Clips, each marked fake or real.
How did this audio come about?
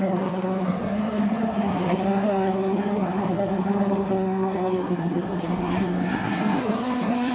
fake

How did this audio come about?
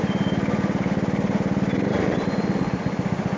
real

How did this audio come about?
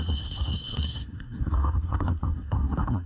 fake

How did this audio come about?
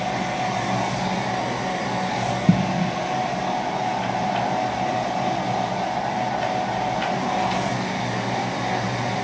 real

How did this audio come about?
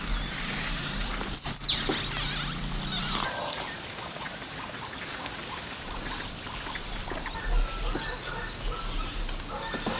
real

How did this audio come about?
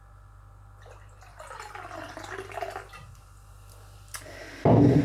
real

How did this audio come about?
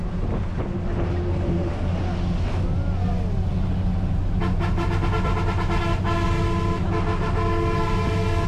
real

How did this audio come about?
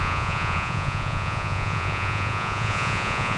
fake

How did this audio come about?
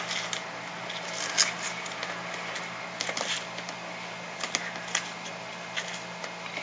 real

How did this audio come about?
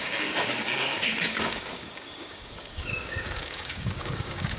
fake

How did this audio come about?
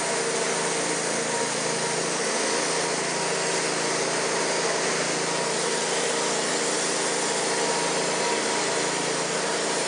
real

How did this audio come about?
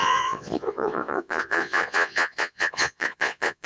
fake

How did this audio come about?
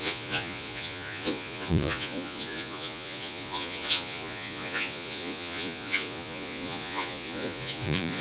fake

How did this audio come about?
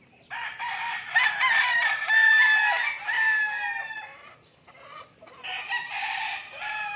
real